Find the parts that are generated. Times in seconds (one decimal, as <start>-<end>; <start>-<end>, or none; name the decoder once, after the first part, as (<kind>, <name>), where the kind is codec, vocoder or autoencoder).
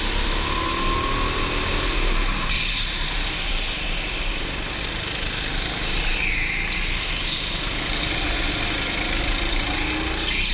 none